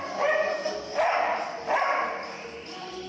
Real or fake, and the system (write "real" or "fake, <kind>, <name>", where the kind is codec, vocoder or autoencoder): fake, vocoder, BigVGAN v2